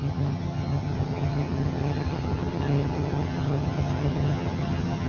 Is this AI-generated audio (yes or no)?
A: yes